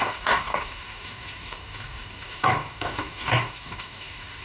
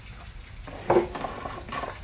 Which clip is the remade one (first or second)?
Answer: first